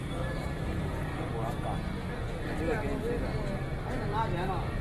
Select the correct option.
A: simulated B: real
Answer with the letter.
B